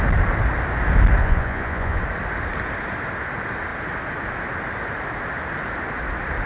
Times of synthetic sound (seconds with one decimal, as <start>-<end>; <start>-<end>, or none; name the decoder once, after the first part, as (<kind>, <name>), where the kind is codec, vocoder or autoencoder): 1.2-2.0 (vocoder, Vocos)